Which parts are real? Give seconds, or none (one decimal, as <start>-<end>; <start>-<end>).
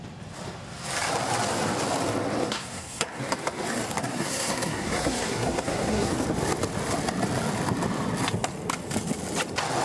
0.0-2.4; 3.2-4.0; 6.1-9.8